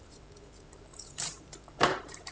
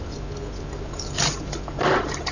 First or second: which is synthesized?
first